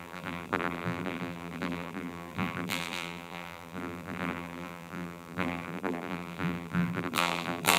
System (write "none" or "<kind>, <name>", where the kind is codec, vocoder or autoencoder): vocoder, BigVGAN v2